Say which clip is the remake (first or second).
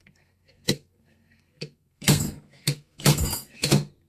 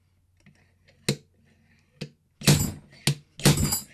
first